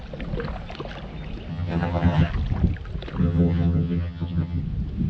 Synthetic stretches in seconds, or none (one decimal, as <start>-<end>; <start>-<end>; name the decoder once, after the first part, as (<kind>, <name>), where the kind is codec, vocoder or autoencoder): 1.5-2.3 (vocoder, HiFi-GAN); 3.2-4.6